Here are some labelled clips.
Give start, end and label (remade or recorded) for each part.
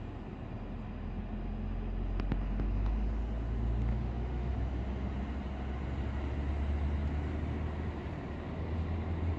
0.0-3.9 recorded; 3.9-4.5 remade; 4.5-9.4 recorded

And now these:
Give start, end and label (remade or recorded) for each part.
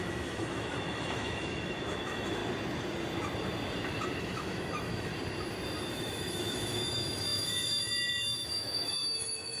0.0-2.4 remade; 2.4-4.2 recorded; 4.2-5.1 remade; 5.1-5.9 recorded; 5.9-9.6 remade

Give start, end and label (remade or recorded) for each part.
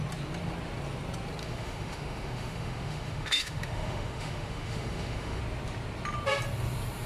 0.0-1.4 recorded; 1.4-5.4 remade; 5.4-7.1 recorded